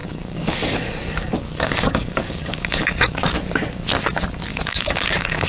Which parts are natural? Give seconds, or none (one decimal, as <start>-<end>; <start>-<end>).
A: 3.3-4.5